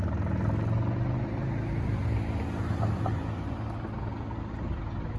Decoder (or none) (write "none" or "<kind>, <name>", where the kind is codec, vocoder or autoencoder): none